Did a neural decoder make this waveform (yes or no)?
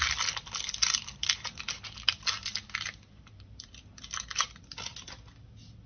no